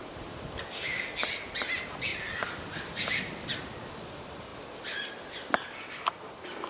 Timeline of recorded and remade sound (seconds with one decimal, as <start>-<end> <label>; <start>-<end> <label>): 0.0-2.1 recorded; 2.1-3.5 remade; 3.5-4.5 recorded; 4.5-5.9 remade; 5.9-6.7 recorded